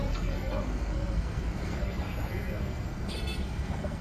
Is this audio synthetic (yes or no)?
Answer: yes